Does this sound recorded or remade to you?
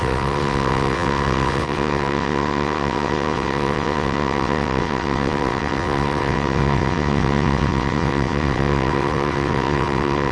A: remade